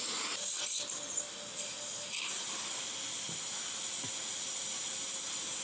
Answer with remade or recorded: recorded